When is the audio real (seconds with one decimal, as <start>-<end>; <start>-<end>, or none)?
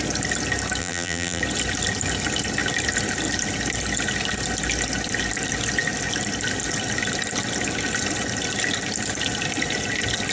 0.0-0.8; 1.4-10.3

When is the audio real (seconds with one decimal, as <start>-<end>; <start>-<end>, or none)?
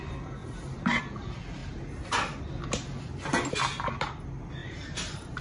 0.0-0.4; 1.0-4.6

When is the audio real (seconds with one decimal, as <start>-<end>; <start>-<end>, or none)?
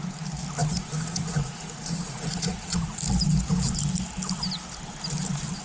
0.0-0.6; 3.0-5.6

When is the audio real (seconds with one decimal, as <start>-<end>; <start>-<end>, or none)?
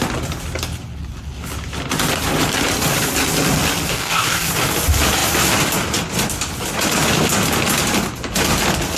0.0-3.9; 4.5-9.0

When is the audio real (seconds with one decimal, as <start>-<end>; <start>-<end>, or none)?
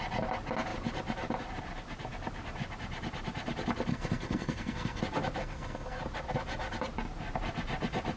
0.0-3.9; 5.0-5.4; 6.0-8.2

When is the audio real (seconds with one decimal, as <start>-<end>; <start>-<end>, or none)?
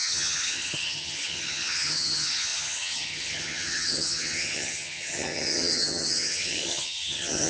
none